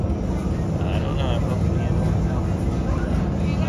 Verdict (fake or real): real